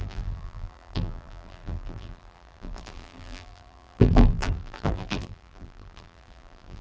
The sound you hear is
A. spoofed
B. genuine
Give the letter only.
A